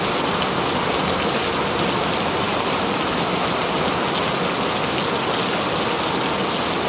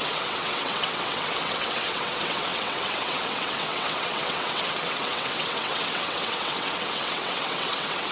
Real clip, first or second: first